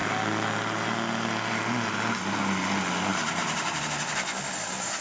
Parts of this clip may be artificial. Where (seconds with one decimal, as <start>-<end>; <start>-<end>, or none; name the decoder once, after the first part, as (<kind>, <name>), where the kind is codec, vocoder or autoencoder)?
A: 3.1-3.8 (vocoder, BigVGAN v2)